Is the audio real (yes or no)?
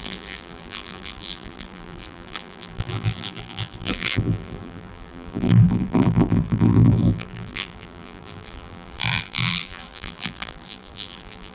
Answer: no